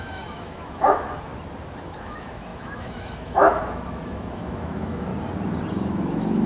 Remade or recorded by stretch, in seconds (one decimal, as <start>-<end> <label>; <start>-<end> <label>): 0.0-1.3 remade; 1.3-1.8 recorded; 1.8-5.1 remade; 5.1-5.7 recorded; 5.7-6.5 remade